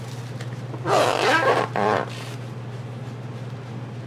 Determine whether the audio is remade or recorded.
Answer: recorded